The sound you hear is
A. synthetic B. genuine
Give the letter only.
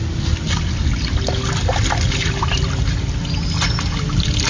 B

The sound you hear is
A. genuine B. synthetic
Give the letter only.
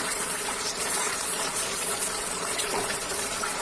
B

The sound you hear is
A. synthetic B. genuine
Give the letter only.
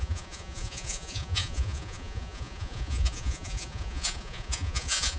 A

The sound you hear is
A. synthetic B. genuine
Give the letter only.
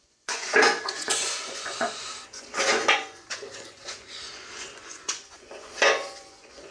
A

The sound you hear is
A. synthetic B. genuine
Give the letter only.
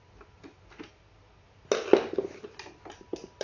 B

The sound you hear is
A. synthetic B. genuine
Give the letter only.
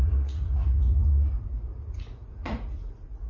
A